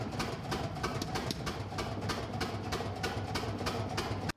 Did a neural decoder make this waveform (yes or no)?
no